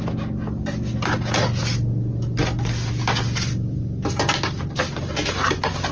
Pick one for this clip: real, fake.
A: real